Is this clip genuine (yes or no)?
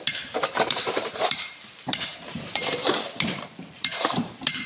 no